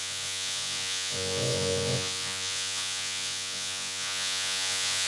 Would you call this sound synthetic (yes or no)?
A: yes